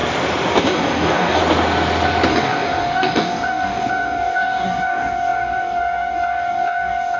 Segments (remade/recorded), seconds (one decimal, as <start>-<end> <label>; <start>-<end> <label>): 0.0-0.6 recorded; 0.6-1.4 remade; 1.4-2.3 recorded; 2.3-7.2 remade

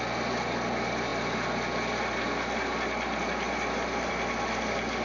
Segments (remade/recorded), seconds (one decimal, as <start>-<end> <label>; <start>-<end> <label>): 0.0-5.0 recorded

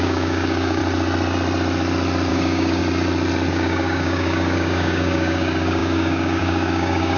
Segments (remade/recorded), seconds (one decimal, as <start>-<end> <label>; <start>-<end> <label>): 0.0-0.8 remade; 0.8-2.3 recorded; 2.3-2.8 remade; 2.8-3.5 recorded; 3.5-7.2 remade